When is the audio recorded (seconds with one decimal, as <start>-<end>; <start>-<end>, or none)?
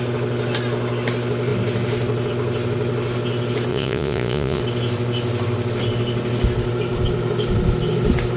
0.0-3.7; 4.6-8.4